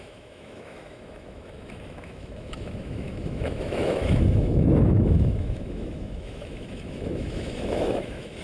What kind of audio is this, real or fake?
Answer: fake